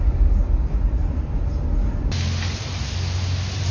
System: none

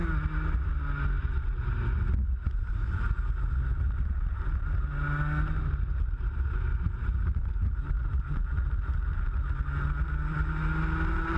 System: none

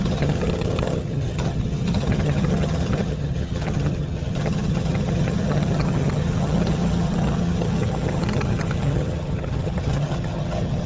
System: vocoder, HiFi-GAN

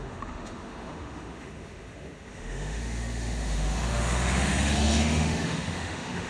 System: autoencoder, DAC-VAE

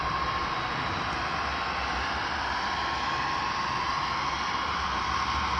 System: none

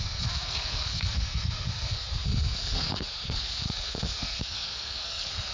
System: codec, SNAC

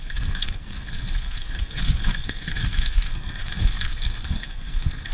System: codec, SNAC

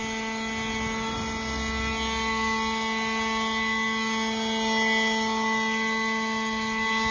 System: none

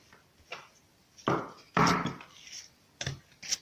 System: none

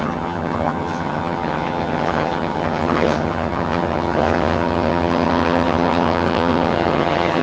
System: vocoder, HiFi-GAN